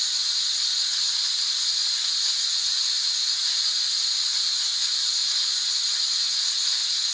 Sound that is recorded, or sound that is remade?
recorded